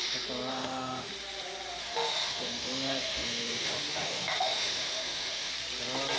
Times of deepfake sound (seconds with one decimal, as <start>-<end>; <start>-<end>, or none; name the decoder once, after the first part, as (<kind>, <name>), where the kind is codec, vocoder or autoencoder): 0.5-1.1 (autoencoder, DAC-VAE); 1.8-5.5